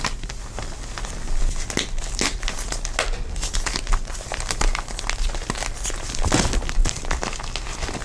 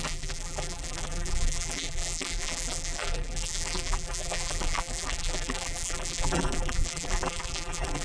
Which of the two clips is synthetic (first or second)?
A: second